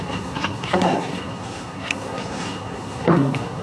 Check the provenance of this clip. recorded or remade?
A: remade